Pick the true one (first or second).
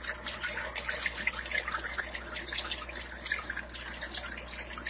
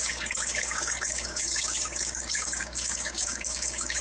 first